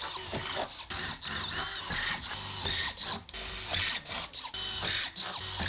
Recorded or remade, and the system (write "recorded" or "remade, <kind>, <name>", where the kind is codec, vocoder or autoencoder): recorded